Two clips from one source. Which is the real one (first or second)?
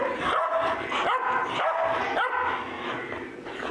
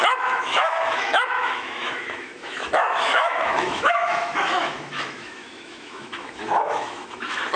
first